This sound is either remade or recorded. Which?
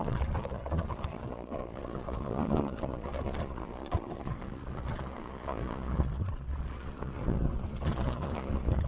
remade